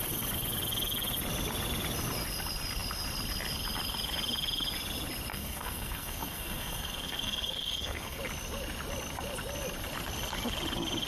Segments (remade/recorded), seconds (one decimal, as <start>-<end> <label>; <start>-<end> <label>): 0.0-5.3 recorded; 5.3-8.2 remade; 8.2-11.1 recorded